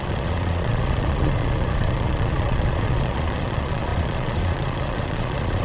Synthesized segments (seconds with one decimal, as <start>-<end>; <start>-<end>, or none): 0.0-5.6